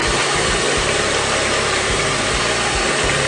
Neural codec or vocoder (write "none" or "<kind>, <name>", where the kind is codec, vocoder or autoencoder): none